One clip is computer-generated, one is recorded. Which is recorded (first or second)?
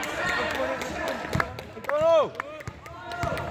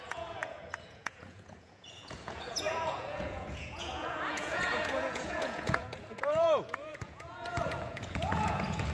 first